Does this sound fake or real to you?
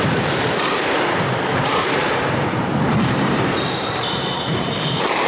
fake